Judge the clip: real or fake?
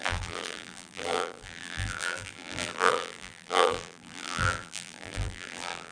fake